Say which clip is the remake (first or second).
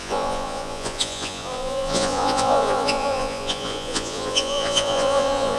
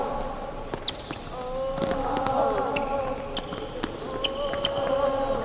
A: first